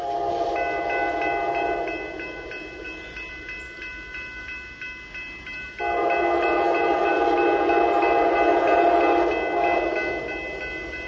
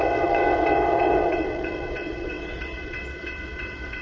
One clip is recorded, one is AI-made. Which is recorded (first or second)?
first